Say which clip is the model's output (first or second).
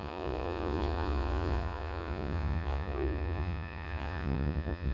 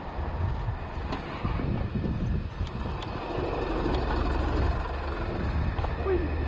first